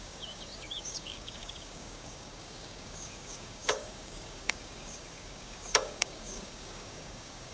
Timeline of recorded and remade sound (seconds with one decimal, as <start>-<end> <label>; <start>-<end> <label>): 0.0-7.5 remade

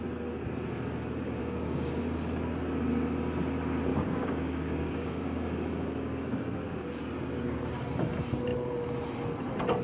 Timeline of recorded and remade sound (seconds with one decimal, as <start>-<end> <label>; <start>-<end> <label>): 0.0-1.4 recorded; 1.4-2.0 remade; 2.0-3.9 recorded; 3.9-7.0 remade; 7.0-9.8 recorded

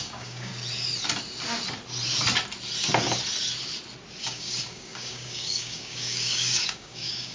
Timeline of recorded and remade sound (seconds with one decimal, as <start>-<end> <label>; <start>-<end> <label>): 0.0-0.5 remade; 0.5-4.2 recorded; 4.2-7.3 remade

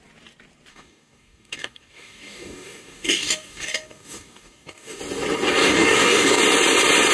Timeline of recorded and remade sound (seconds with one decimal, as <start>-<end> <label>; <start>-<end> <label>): 0.0-0.7 recorded; 0.7-5.0 remade; 5.0-5.6 recorded; 5.6-6.4 remade; 6.4-7.1 recorded

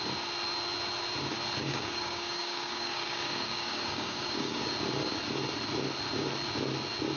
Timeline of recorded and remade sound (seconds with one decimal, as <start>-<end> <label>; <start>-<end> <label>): 0.0-1.6 recorded; 1.6-4.7 remade; 4.7-7.2 recorded

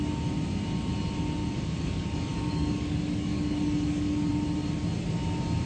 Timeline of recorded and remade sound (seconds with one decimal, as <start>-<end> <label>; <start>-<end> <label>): 0.0-1.4 recorded; 1.4-4.3 remade; 4.3-5.7 recorded